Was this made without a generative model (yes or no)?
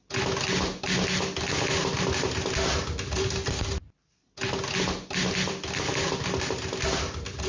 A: yes